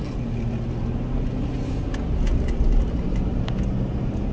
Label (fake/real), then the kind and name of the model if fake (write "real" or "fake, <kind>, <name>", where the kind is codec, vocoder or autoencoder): real